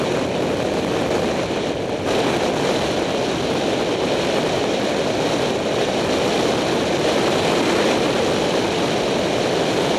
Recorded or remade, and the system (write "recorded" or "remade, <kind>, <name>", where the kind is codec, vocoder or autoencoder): recorded